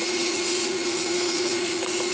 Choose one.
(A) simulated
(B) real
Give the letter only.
A